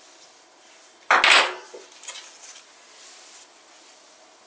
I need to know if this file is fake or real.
real